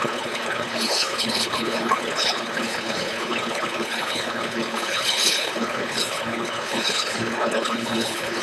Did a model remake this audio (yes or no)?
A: yes